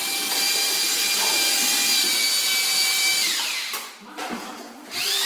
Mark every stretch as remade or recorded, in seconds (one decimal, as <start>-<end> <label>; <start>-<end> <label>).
0.0-1.5 remade; 1.5-2.7 recorded; 2.7-3.3 remade; 3.3-5.3 recorded